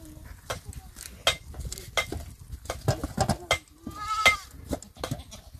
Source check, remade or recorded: recorded